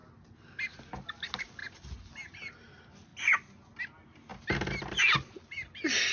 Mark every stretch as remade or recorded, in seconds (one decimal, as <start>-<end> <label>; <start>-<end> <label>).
0.0-6.1 recorded